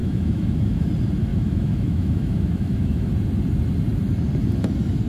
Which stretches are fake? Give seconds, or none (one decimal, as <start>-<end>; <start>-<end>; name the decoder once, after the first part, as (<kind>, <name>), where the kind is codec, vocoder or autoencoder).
0.0-0.9 (autoencoder, DAC-VAE); 1.3-3.1